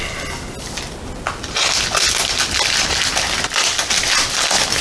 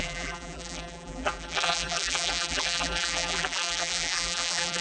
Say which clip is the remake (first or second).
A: second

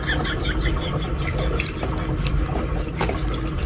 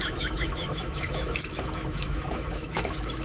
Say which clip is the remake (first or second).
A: second